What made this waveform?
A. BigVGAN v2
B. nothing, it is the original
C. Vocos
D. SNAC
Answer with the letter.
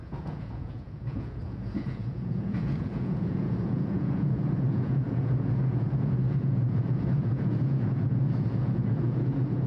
C